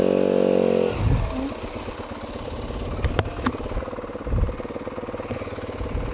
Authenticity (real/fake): real